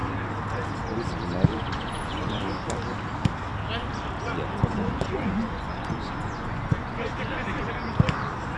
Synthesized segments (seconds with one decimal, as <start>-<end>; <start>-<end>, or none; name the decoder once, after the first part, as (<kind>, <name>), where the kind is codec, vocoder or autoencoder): 1.5-2.4 (vocoder, Vocos); 4.7-7.7